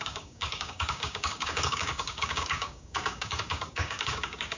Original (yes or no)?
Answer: no